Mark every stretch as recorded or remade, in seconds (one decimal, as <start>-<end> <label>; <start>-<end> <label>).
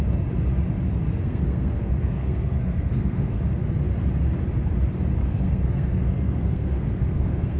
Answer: 0.0-1.1 recorded; 1.1-3.4 remade; 3.4-5.2 recorded; 5.2-7.6 remade